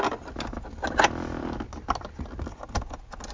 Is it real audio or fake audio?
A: real